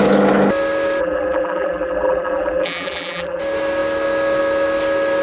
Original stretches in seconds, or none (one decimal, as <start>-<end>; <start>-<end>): 0.0-1.0; 3.4-5.2